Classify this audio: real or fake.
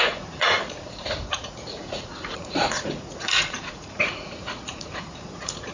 fake